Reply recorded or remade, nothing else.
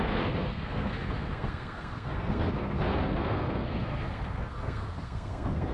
remade